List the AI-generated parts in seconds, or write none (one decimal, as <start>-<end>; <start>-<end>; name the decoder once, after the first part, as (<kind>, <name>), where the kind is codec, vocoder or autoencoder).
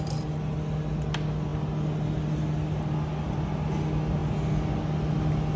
none